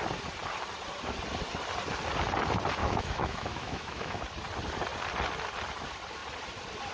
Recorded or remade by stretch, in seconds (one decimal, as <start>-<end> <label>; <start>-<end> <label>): 0.0-2.8 recorded; 2.8-4.2 remade; 4.2-6.9 recorded